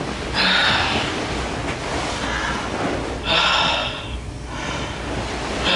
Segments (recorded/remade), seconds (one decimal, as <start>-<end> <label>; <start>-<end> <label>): 0.0-5.8 recorded